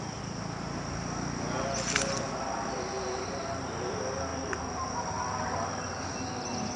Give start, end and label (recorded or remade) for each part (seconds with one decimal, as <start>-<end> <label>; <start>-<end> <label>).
0.0-6.8 recorded